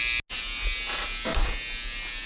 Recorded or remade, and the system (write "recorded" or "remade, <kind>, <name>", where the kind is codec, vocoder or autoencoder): recorded